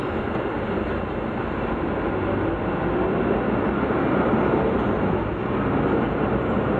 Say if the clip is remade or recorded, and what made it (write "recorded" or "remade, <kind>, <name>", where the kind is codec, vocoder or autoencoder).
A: recorded